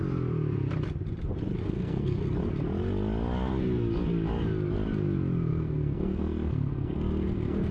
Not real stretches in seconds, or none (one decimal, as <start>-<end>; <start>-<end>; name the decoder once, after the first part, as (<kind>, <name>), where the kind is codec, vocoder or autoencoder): 1.6-2.2 (codec, SNAC); 5.5-7.7